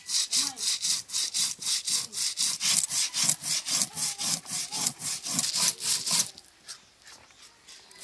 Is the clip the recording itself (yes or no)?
yes